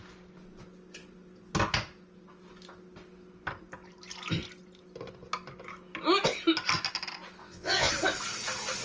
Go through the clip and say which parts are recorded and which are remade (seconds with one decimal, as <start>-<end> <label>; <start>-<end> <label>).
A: 0.0-7.4 recorded; 7.4-7.9 remade; 7.9-8.8 recorded